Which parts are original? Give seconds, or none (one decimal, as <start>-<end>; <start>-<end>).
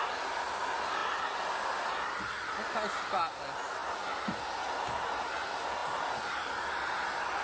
0.0-7.4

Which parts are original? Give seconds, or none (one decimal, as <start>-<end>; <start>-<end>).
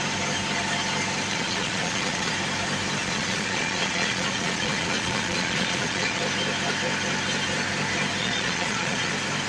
0.0-1.3; 2.3-3.0; 6.2-8.2; 9.1-9.5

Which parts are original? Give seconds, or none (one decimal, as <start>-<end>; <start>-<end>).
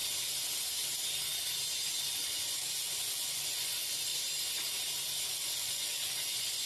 0.0-2.0; 4.1-5.3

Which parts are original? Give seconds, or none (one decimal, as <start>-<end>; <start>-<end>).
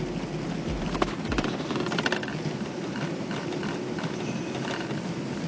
0.0-5.5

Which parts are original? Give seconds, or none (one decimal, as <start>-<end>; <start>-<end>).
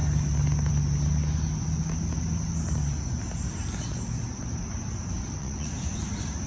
0.0-5.4; 6.0-6.5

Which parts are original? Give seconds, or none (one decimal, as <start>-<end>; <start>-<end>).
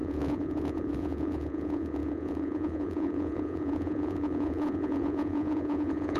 none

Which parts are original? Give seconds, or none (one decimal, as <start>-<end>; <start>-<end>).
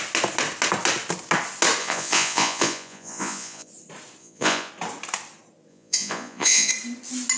0.0-1.8; 3.7-4.2; 4.7-5.7; 6.7-7.4